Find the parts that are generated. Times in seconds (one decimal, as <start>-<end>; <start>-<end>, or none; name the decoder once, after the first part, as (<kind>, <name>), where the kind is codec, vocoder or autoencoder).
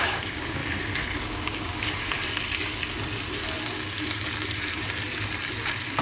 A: 0.0-0.6 (codec, DAC); 1.2-2.2